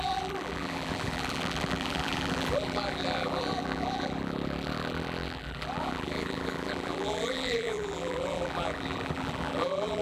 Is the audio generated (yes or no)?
yes